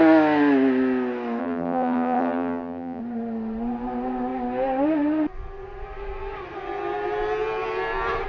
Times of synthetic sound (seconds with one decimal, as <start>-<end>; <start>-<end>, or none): 1.4-3.0